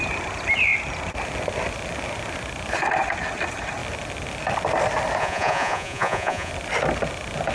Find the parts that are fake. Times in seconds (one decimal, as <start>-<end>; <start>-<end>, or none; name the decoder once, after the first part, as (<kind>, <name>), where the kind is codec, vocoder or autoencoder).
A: 5.2-6.5 (vocoder, Vocos)